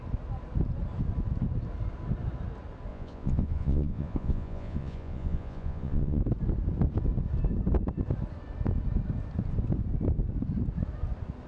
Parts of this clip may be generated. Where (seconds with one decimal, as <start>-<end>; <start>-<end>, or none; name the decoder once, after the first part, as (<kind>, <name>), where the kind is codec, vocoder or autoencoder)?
2.9-6.2 (vocoder, Vocos)